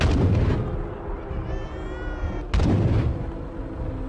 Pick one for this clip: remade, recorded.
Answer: recorded